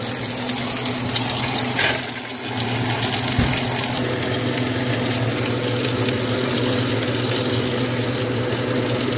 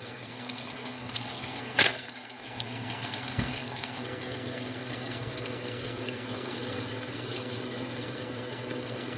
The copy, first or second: second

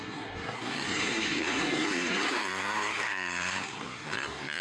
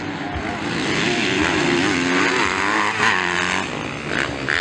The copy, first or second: first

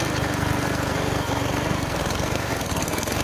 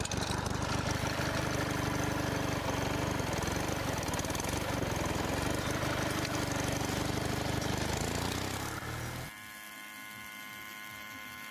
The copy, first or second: first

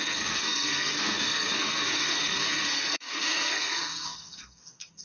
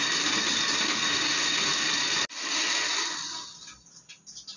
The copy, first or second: first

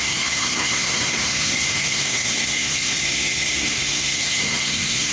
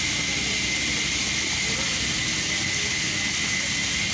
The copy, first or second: first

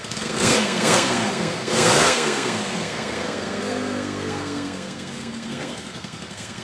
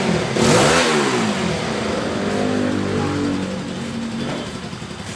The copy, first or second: first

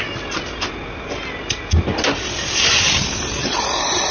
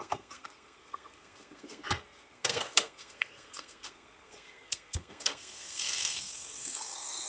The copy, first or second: second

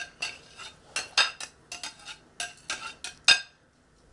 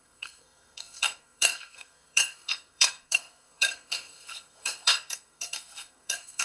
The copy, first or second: second